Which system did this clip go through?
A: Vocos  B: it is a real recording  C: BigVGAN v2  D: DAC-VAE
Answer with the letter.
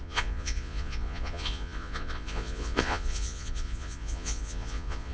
A